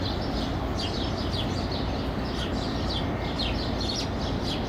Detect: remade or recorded recorded